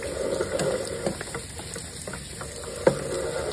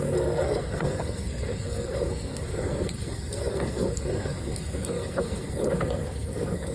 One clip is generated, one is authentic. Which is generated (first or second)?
second